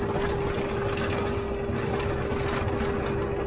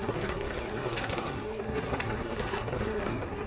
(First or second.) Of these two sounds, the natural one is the first